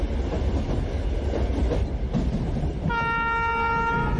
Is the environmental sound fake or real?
real